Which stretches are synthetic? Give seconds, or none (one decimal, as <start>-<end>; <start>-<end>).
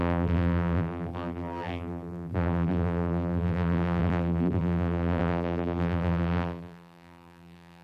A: 0.0-7.8